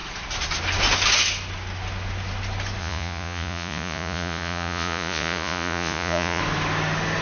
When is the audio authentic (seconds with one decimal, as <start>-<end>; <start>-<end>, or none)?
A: 0.0-2.8; 6.4-7.2